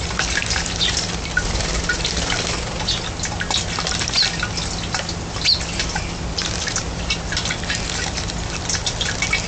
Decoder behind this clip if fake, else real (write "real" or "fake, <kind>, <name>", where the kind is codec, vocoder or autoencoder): real